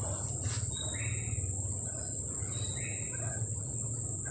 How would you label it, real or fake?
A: real